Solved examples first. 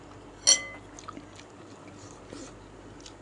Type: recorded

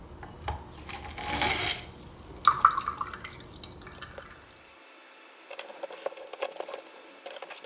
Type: recorded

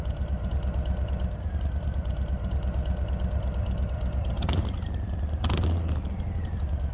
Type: remade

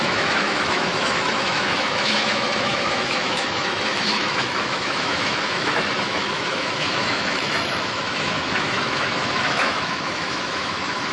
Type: remade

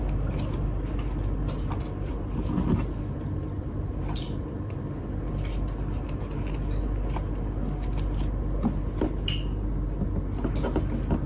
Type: recorded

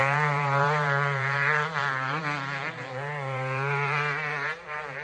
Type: remade